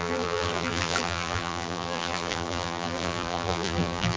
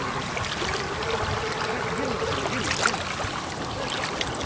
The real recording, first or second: second